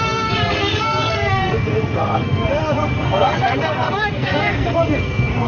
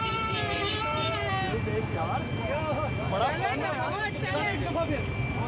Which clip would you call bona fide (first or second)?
second